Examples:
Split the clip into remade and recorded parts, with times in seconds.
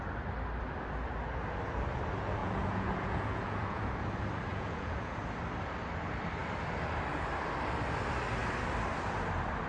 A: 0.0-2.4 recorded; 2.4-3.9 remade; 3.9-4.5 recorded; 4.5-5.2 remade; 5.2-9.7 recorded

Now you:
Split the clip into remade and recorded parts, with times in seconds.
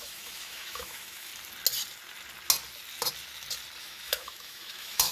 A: 0.0-1.3 remade; 1.3-3.8 recorded; 3.8-5.1 remade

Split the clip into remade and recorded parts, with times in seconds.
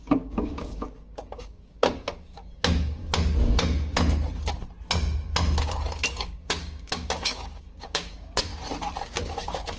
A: 0.0-3.0 remade; 3.0-6.1 recorded; 6.1-8.5 remade; 8.5-9.0 recorded; 9.0-9.8 remade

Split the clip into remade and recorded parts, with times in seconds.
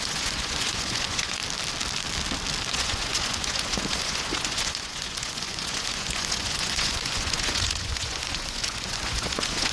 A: 0.0-1.4 remade; 1.4-2.7 recorded; 2.7-9.7 remade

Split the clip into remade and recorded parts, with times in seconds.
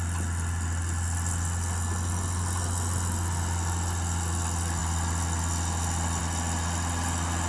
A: 0.0-7.5 recorded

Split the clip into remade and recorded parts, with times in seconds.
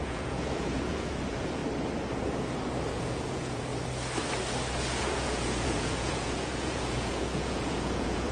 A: 0.0-1.6 remade; 1.6-2.9 recorded; 2.9-3.7 remade; 3.7-5.0 recorded; 5.0-8.3 remade